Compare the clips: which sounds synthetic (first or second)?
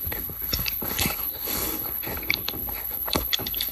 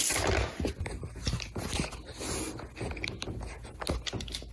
first